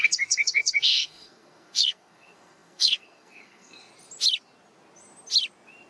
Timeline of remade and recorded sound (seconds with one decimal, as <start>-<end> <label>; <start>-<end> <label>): 0.0-3.9 remade; 3.9-5.9 recorded